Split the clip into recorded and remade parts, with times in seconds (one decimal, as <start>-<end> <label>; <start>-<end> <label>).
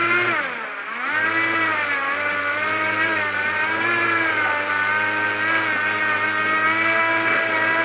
0.0-4.7 remade; 4.7-7.8 recorded